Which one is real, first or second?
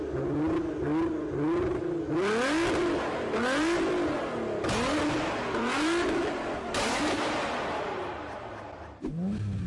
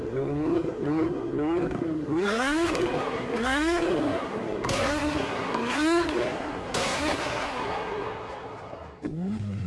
first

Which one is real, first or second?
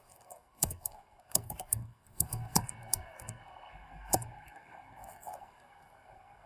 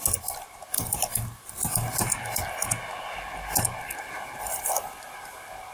second